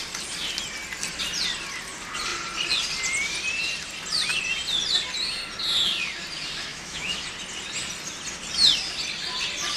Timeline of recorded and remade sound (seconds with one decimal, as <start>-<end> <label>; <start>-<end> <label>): 0.0-6.7 recorded; 6.7-7.2 remade; 7.2-9.8 recorded